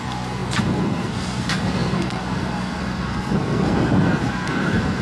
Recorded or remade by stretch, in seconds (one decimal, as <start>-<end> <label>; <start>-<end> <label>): 0.0-5.0 remade